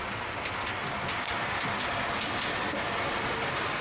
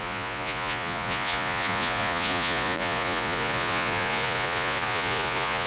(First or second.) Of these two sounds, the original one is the first